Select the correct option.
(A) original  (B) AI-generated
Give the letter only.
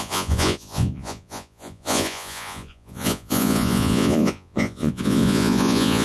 B